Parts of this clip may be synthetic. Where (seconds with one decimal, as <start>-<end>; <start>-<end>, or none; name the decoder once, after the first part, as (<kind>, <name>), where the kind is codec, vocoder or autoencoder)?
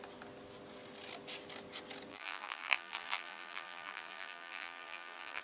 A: 2.1-5.4 (vocoder, BigVGAN v2)